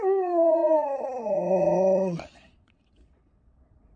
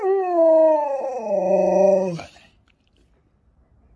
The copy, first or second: first